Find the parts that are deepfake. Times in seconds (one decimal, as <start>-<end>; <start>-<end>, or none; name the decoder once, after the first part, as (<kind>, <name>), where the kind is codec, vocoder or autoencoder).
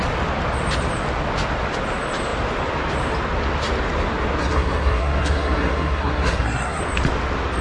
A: 4.4-6.8 (codec, SNAC)